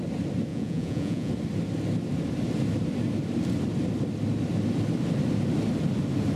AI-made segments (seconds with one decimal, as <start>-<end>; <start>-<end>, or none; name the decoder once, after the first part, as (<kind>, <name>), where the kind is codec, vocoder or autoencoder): 0.5-1.3 (vocoder, Vocos)